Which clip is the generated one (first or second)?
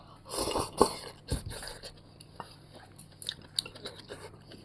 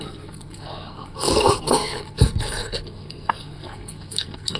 second